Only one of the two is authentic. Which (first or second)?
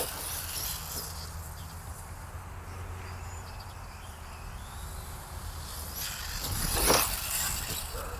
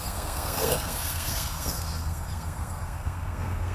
first